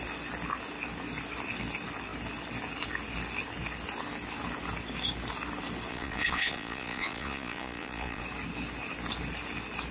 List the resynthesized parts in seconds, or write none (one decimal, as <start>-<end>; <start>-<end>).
5.9-8.2